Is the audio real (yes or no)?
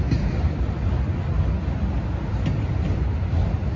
yes